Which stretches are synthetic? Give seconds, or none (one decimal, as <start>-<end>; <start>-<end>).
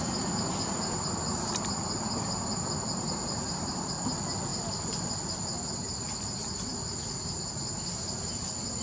4.5-5.1